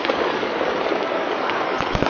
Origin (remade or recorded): remade